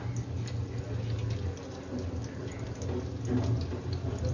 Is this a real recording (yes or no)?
yes